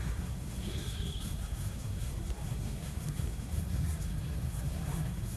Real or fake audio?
fake